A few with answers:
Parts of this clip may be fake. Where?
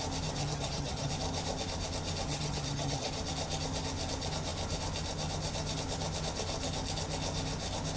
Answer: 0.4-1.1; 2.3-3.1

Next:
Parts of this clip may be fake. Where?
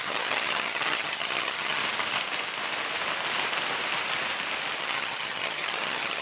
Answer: 0.0-1.8; 4.8-6.2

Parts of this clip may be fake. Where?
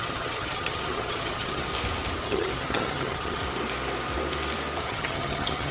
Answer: 0.0-1.7; 2.2-3.4; 4.8-5.7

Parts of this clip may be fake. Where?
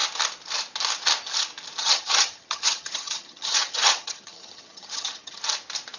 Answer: 1.8-5.4